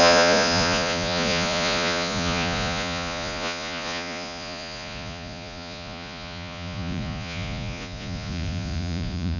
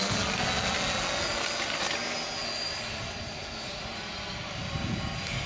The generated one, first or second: first